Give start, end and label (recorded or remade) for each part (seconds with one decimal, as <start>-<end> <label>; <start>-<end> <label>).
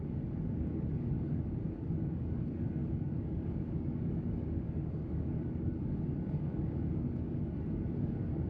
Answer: 0.0-8.5 remade